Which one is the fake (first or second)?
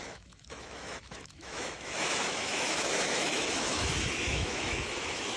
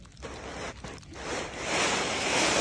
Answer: first